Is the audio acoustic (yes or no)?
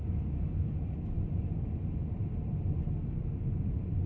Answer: yes